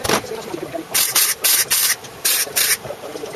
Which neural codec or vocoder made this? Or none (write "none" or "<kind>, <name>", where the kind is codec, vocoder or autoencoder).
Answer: vocoder, BigVGAN v2